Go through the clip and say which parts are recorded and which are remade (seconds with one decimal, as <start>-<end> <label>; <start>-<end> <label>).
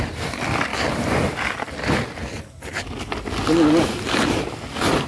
0.0-5.1 recorded